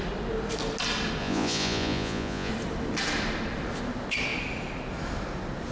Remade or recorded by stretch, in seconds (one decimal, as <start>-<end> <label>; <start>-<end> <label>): 0.0-1.2 recorded; 1.2-2.5 remade; 2.5-5.7 recorded